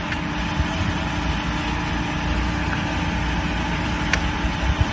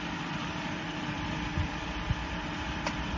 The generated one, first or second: second